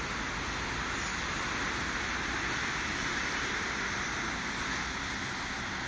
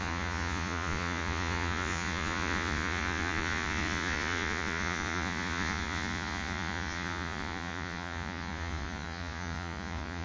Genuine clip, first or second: first